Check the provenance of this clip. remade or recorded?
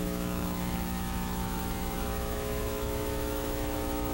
remade